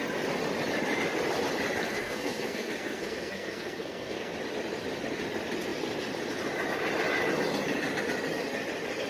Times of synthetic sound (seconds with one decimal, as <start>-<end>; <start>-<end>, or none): 1.8-4.3